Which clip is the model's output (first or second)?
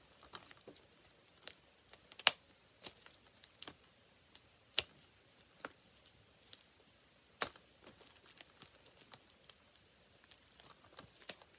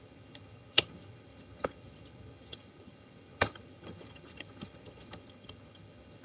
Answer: second